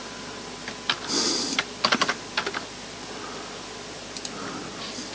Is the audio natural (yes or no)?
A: yes